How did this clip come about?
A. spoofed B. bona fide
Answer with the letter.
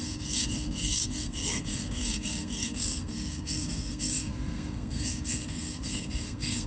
A